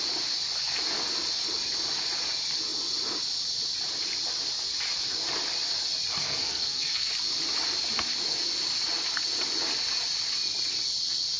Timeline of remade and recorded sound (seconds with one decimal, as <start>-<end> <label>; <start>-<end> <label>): 0.0-6.2 recorded; 6.2-7.1 remade; 7.1-11.4 recorded